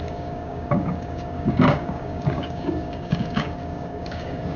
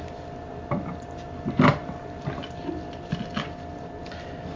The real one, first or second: second